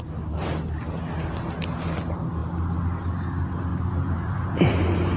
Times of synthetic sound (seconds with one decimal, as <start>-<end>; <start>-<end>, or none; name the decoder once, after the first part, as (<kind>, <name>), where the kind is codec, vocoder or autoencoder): none